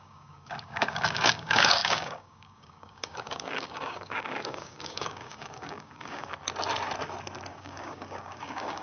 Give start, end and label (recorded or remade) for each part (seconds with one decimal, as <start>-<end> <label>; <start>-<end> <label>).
0.0-6.3 remade; 6.3-7.5 recorded; 7.5-8.8 remade